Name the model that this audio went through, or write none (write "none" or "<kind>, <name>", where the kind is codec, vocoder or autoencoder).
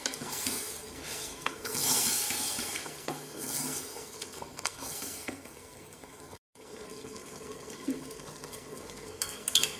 codec, SNAC